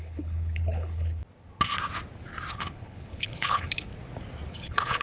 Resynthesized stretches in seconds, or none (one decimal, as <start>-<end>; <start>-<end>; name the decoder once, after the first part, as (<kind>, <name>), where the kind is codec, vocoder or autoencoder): 0.0-1.2 (codec, HILCodec); 2.5-3.9; 4.5-5.0